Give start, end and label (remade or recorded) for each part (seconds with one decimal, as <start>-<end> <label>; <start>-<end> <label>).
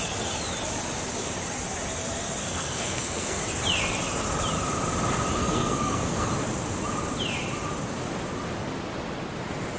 0.0-2.4 recorded; 2.4-3.4 remade; 3.4-5.4 recorded; 5.4-6.3 remade; 6.3-9.8 recorded